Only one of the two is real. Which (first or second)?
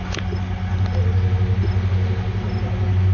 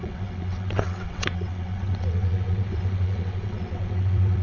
first